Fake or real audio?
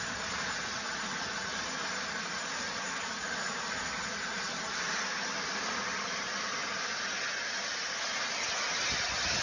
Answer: real